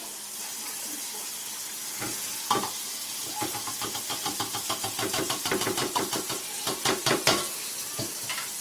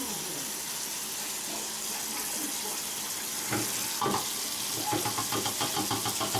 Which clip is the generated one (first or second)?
first